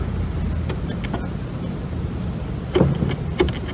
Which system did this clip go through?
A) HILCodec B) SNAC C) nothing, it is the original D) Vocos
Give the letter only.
C